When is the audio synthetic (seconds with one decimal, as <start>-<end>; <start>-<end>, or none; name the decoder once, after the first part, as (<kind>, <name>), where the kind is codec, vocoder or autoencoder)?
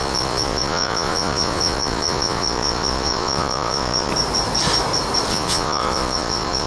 0.0-4.1 (vocoder, Vocos); 5.3-6.7